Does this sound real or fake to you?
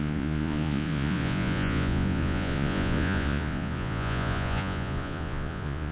fake